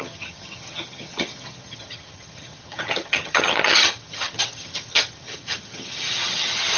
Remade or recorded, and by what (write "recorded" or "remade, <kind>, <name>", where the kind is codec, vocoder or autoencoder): remade, vocoder, HiFi-GAN